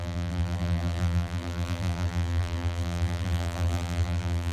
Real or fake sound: fake